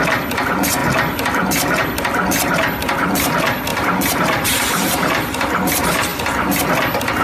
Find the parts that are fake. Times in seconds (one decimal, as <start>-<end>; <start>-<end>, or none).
3.7-4.9